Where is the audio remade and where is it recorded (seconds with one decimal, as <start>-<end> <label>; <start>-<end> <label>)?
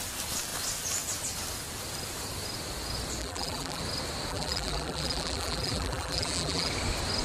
0.0-3.2 recorded; 3.2-3.8 remade; 3.8-4.3 recorded; 4.3-6.7 remade; 6.7-7.2 recorded